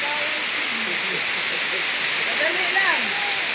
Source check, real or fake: real